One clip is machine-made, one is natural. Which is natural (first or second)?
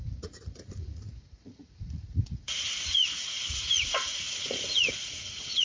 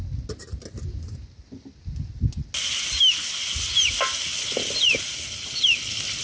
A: second